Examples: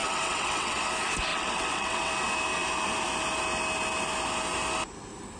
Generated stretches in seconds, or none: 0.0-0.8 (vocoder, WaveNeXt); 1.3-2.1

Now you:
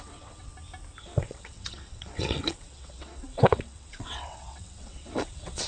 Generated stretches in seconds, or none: 0.0-0.5 (vocoder, WaveNeXt); 1.0-5.7

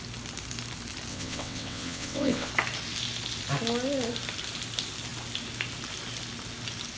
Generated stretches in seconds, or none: 1.1-2.5 (vocoder, WaveNeXt)

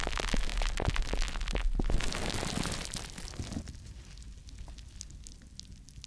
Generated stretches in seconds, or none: none